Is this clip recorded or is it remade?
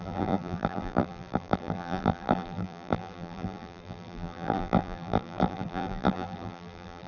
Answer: remade